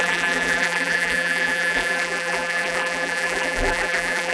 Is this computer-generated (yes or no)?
yes